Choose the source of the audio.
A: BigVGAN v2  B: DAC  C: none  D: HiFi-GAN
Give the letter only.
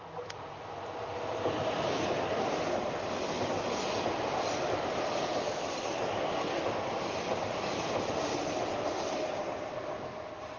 C